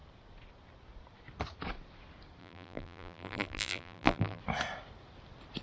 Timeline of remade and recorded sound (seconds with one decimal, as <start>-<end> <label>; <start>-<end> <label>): 0.0-2.4 recorded; 2.4-4.4 remade; 4.4-5.6 recorded